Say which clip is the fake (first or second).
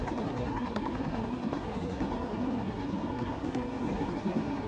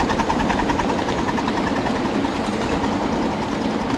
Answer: first